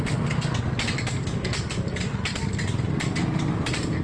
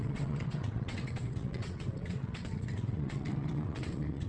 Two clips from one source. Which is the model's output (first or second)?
second